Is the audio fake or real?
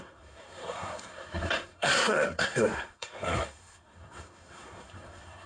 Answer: fake